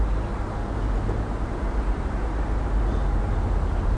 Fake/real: real